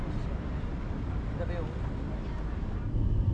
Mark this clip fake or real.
real